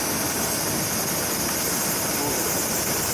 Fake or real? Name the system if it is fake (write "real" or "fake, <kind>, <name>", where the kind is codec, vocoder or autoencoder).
real